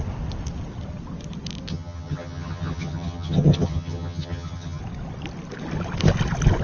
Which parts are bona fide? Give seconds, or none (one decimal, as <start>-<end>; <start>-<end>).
0.0-1.7; 4.8-6.6